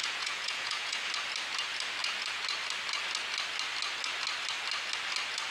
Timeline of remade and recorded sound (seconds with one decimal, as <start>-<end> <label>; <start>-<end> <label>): 0.0-1.1 remade; 1.1-5.5 recorded

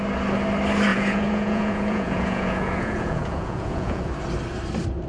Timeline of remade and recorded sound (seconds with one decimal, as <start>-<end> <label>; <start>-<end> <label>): 0.0-0.9 recorded; 0.9-4.0 remade; 4.0-5.1 recorded

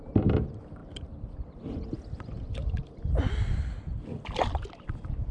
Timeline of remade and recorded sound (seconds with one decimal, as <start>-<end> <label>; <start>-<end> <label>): 0.0-5.3 recorded

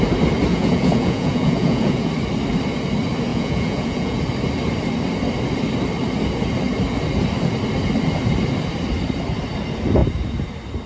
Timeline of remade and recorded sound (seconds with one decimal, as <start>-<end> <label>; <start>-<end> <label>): 0.0-0.5 recorded; 0.5-2.1 remade; 2.1-3.3 recorded; 3.3-4.2 remade; 4.2-10.9 recorded

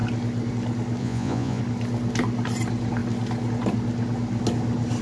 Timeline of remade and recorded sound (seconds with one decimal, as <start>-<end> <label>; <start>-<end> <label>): 0.0-1.0 recorded; 1.0-1.6 remade; 1.6-5.0 recorded

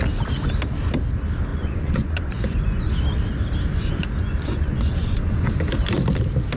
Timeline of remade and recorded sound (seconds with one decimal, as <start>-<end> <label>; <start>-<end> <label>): 0.0-1.5 recorded; 1.5-2.9 remade; 2.9-3.7 recorded; 3.7-5.5 remade; 5.5-6.6 recorded

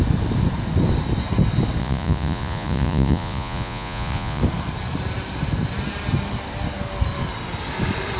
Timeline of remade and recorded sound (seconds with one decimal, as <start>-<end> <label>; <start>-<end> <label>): 0.0-1.8 recorded; 1.8-4.4 remade; 4.4-8.2 recorded

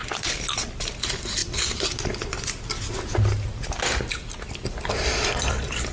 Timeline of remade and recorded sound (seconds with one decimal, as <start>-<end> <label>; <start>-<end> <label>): 0.0-5.9 recorded